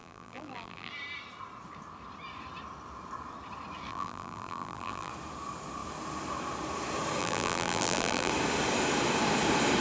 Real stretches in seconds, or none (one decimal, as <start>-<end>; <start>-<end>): 0.9-3.9; 5.1-7.2; 8.3-9.8